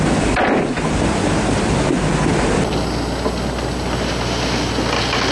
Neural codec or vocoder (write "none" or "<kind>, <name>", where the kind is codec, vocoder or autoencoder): none